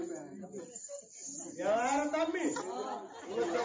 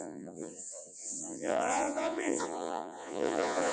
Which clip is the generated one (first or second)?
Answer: second